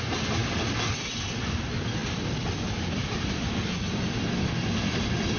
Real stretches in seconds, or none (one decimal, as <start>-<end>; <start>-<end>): 0.0-5.4